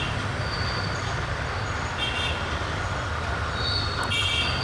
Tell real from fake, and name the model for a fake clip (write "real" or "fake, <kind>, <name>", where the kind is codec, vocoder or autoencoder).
real